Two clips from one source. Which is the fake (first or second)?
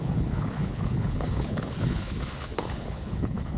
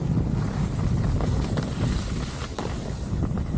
first